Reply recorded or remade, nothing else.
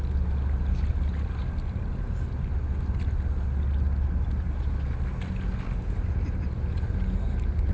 recorded